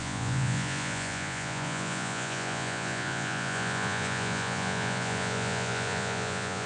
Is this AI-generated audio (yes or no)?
yes